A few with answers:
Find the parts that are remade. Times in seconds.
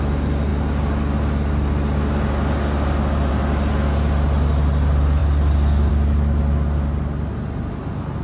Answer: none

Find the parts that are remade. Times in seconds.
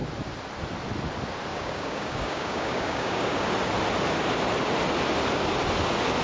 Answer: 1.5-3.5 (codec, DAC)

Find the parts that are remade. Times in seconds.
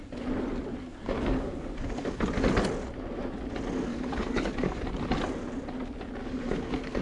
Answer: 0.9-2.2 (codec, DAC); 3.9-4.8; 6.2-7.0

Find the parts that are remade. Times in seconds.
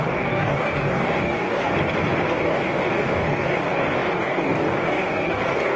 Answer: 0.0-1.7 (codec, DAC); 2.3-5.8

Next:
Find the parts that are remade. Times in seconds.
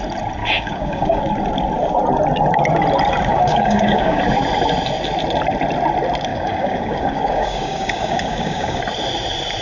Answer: 0.4-1.2 (codec, DAC); 3.3-4.2; 6.3-8.8